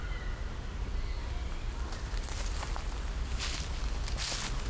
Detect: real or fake real